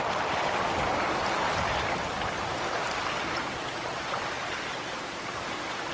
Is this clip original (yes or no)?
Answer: yes